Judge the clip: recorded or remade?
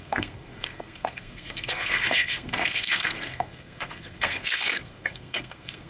remade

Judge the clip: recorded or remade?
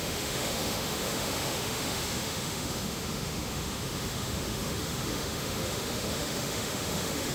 remade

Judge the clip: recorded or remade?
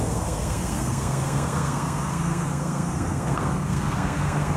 remade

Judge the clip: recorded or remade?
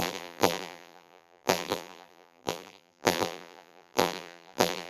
remade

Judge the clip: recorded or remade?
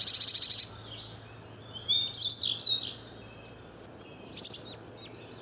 recorded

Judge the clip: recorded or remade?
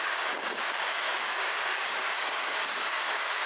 remade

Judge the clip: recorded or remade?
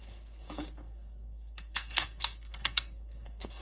remade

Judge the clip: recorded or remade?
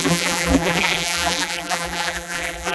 remade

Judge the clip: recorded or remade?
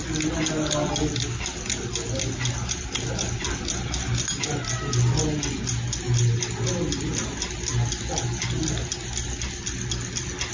recorded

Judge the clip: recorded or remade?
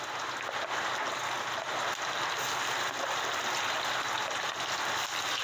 recorded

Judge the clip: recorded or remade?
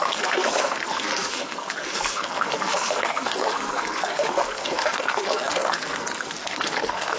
remade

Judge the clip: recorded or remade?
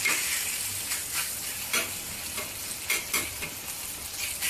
recorded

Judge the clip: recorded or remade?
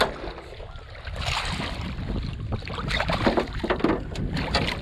recorded